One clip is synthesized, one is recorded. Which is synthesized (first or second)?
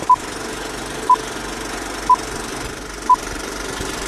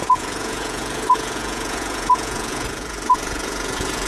second